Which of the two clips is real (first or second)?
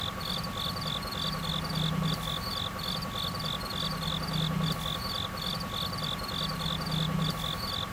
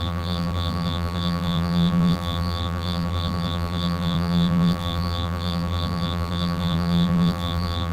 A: first